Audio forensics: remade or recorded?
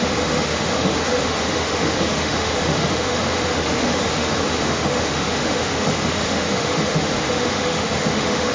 remade